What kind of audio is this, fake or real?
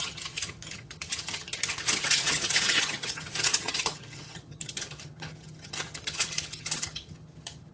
fake